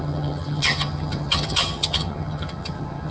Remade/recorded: remade